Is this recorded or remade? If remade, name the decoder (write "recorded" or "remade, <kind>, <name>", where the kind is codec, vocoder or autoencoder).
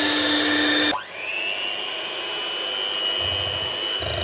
recorded